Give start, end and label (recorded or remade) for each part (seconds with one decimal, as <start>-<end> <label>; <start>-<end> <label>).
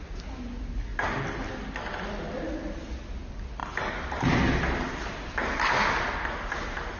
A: 0.0-7.0 recorded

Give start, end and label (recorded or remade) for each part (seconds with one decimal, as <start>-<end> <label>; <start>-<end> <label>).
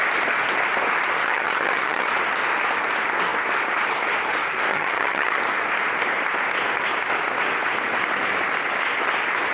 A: 0.0-1.2 recorded; 1.2-2.1 remade; 2.1-4.7 recorded; 4.7-5.4 remade; 5.4-9.5 recorded